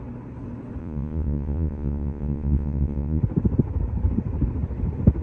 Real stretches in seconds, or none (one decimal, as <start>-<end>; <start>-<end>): 0.0-0.8; 3.2-5.2